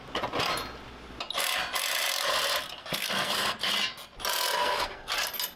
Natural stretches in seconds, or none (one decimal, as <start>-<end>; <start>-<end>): 0.0-2.8; 3.7-4.6; 5.1-5.6